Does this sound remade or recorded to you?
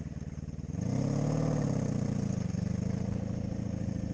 recorded